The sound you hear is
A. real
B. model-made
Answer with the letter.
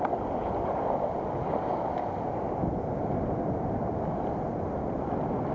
A